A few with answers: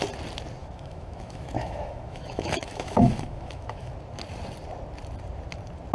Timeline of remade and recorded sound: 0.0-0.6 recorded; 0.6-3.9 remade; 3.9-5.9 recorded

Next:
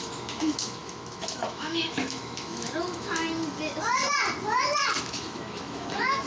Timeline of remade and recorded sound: 0.0-3.2 remade; 3.2-5.0 recorded; 5.0-6.3 remade

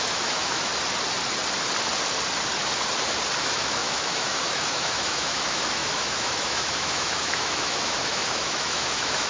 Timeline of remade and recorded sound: 0.0-0.7 remade; 0.7-3.4 recorded; 3.4-9.3 remade